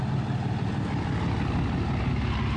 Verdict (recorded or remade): recorded